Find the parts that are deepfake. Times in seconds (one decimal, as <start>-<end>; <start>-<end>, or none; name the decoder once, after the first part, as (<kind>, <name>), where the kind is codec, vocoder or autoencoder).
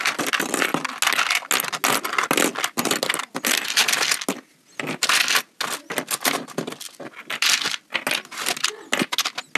none